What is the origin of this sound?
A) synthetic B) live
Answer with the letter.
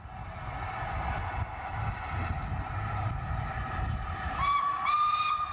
B